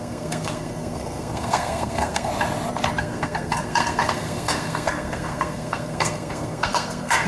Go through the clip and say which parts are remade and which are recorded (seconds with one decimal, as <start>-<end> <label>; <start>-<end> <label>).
0.0-2.3 remade; 2.3-3.0 recorded; 3.0-7.3 remade